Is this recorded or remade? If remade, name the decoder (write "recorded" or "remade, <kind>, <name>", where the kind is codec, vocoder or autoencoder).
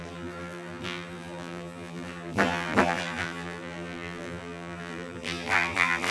remade, vocoder, BigVGAN v2